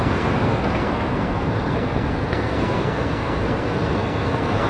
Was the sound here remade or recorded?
remade